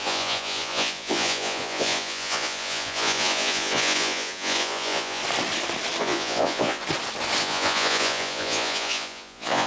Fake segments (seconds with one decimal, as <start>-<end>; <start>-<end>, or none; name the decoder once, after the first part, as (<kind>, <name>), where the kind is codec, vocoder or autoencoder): 0.0-5.2 (vocoder, Vocos); 6.0-6.8; 7.4-9.7